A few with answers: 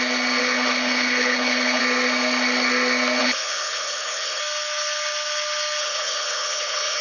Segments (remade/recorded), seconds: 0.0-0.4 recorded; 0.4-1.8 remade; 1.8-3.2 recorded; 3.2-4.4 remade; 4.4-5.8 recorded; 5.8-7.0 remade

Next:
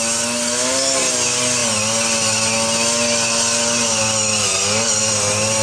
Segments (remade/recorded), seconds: 0.0-5.6 recorded